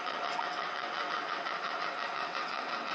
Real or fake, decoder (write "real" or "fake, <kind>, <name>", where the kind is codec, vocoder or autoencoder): fake, vocoder, WaveNeXt